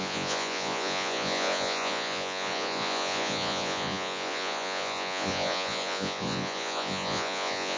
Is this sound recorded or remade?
remade